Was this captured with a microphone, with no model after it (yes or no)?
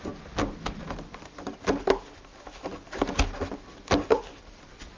yes